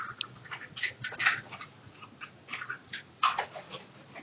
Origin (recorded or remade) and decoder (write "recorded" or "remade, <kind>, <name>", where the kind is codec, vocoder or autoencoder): recorded